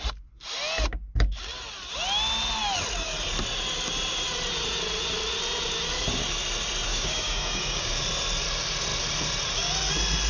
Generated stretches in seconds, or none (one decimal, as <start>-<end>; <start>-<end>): 6.9-7.9